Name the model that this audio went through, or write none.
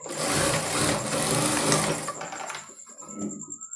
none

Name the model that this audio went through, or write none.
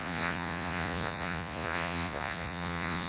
vocoder, Vocos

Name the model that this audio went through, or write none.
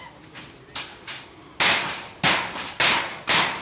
none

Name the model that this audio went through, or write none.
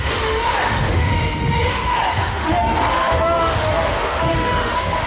autoencoder, DAC-VAE